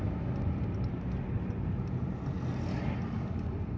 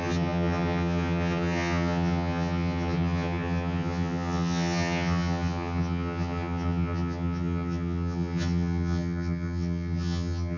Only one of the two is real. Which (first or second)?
first